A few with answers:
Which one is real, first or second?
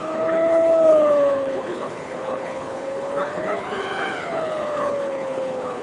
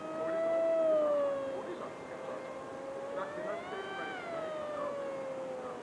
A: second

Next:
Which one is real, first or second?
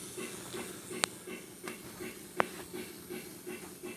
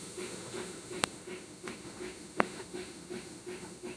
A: first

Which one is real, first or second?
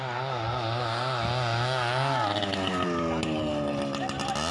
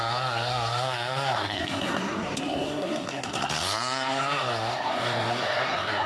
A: first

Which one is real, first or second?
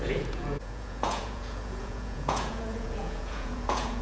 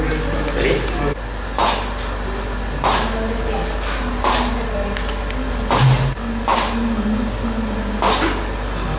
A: second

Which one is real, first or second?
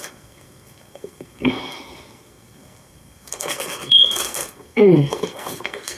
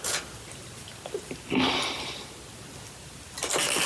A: second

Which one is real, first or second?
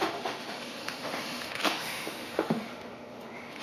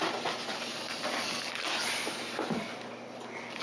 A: second